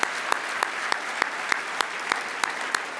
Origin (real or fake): real